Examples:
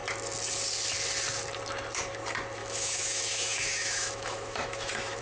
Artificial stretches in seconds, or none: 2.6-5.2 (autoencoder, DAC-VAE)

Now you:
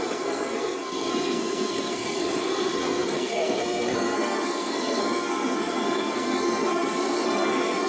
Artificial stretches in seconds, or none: 0.0-7.9 (codec, SNAC)

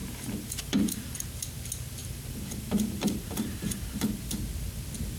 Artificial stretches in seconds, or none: 0.0-1.2 (vocoder, BigVGAN v2); 2.0-4.2

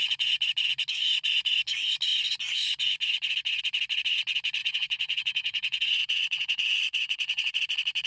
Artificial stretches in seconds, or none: 4.6-7.6 (vocoder, WaveNeXt)

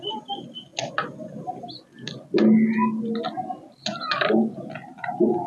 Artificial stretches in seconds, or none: none

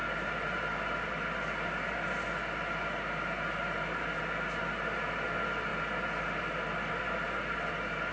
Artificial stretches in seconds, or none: none

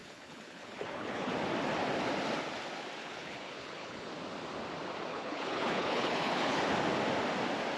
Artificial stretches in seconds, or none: 0.0-1.3 (codec, HILCodec); 3.0-4.1; 5.1-6.6

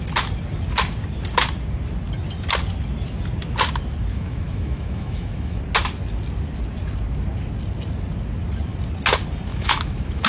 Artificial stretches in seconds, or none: 4.1-5.6 (autoencoder, DAC-VAE); 9.5-10.3